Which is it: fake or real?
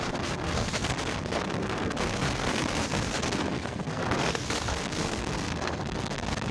fake